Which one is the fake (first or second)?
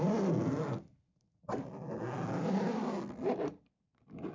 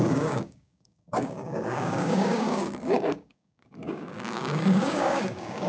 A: second